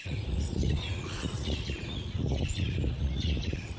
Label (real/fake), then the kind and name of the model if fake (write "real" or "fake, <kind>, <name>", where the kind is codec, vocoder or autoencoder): fake, vocoder, Vocos